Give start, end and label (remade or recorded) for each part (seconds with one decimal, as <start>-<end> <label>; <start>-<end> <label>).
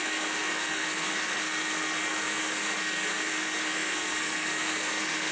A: 0.0-5.3 remade